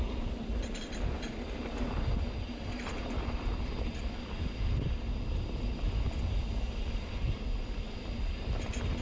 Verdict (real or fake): real